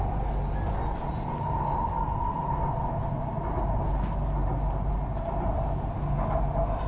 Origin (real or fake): real